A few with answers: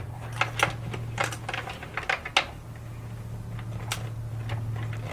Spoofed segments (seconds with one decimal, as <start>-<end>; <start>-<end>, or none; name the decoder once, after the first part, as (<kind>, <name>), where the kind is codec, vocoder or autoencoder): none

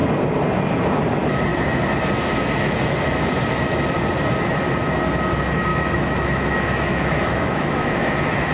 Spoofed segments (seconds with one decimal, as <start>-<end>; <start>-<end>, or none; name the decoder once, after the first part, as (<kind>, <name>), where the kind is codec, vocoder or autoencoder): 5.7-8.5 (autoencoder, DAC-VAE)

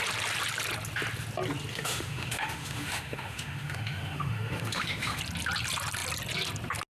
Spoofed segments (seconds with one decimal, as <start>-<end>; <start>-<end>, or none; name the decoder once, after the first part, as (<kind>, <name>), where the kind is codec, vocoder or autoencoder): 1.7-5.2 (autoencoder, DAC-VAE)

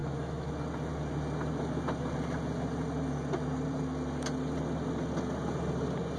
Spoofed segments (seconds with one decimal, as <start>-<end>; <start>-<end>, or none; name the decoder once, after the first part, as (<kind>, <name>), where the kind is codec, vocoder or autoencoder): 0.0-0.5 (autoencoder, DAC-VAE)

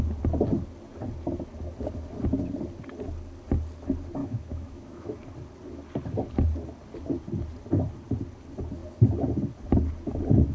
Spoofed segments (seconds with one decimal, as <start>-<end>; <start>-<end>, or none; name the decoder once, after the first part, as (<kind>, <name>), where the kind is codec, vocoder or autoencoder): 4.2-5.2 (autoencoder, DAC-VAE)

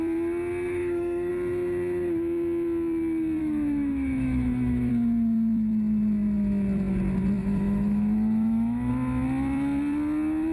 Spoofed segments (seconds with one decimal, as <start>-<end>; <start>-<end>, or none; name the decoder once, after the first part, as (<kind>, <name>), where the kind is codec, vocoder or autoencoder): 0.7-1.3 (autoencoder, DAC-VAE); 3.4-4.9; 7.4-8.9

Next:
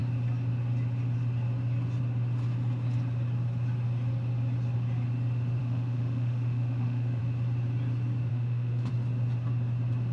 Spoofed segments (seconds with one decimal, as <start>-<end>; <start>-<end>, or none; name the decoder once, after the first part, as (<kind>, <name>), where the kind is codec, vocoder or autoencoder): 5.6-7.2 (autoencoder, DAC-VAE); 8.3-8.9